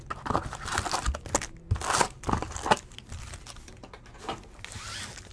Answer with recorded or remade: recorded